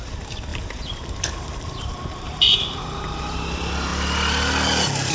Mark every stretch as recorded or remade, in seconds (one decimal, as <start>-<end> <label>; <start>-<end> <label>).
0.0-0.5 recorded; 0.5-3.2 remade; 3.2-5.1 recorded